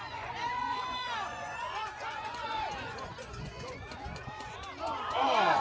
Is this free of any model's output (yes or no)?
no